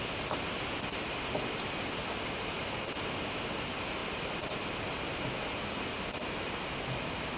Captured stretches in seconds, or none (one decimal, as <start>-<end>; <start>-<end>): 0.0-7.4